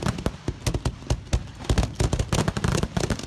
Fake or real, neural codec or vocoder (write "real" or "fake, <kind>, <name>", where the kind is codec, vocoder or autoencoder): real